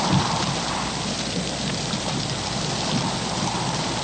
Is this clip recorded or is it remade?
recorded